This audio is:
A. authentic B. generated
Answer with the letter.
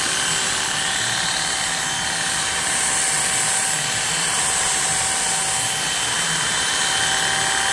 A